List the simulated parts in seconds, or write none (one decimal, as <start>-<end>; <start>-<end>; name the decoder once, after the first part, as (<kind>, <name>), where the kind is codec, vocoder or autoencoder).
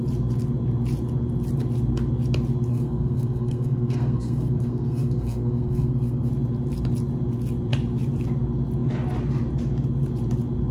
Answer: 2.7-6.3 (codec, SNAC)